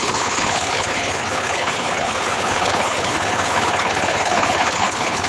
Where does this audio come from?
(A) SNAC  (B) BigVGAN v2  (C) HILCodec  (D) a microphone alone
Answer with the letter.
C